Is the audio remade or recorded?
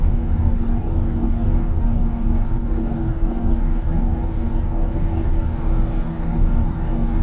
remade